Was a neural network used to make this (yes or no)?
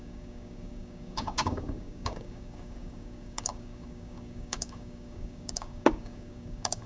yes